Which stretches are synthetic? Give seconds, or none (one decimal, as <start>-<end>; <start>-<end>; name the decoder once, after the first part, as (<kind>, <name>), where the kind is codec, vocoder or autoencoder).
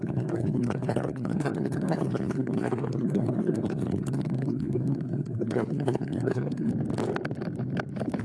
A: 0.0-6.7 (codec, SNAC)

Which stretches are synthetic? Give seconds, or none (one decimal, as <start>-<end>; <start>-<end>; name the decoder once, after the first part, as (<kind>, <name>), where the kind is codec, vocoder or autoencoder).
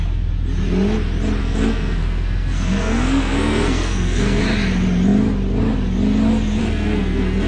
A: 1.4-4.4 (codec, SNAC); 6.6-7.5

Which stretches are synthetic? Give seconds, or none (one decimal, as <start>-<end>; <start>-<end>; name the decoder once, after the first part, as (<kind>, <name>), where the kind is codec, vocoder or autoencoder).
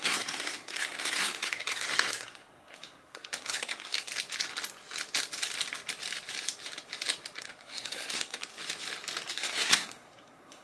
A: 0.0-4.1 (codec, SNAC); 7.4-8.5; 9.3-10.6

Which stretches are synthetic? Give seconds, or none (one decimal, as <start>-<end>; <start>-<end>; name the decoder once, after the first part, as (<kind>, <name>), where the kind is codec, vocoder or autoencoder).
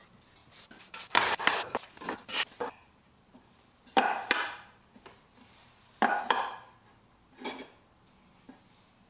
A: 0.4-1.9 (vocoder, BigVGAN v2); 2.8-6.8